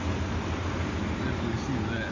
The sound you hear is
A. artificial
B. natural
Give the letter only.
B